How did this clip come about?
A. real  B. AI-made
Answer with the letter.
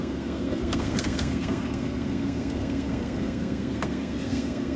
B